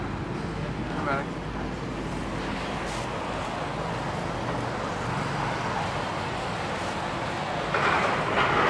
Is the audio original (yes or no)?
yes